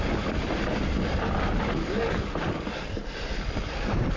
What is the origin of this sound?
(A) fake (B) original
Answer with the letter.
B